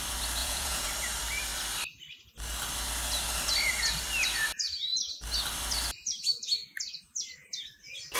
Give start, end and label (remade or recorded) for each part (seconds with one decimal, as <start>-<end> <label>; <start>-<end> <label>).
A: 0.0-0.4 recorded; 0.4-0.9 remade; 0.9-8.2 recorded